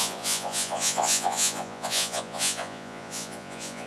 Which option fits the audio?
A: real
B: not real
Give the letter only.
B